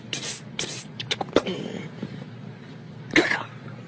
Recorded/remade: remade